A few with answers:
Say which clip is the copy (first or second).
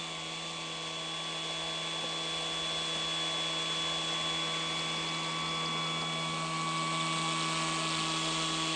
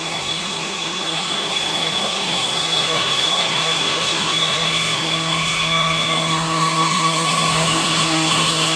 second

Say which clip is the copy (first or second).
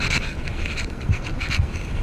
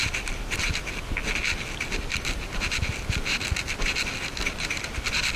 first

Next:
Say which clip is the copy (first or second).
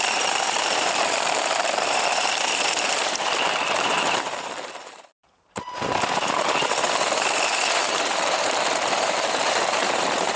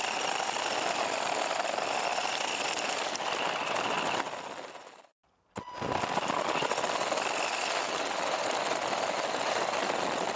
first